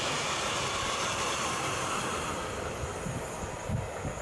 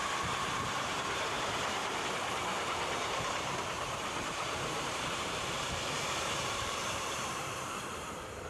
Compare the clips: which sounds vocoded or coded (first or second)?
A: second